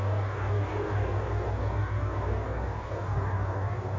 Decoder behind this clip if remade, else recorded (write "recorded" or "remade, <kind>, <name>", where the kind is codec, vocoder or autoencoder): remade, codec, DAC